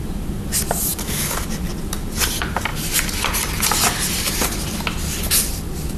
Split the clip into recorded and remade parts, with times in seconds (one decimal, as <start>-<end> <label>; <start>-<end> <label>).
0.0-6.0 recorded